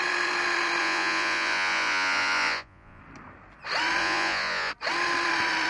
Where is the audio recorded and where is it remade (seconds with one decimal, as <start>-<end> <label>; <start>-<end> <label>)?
0.0-0.8 recorded; 0.8-3.0 remade; 3.0-4.0 recorded; 4.0-4.7 remade; 4.7-5.7 recorded